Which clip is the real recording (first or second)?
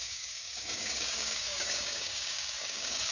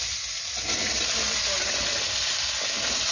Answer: second